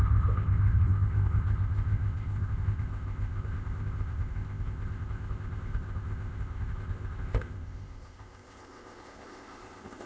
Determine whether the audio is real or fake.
fake